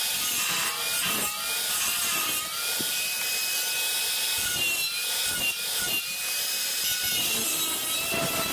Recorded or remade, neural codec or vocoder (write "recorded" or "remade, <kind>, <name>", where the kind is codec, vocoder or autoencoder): recorded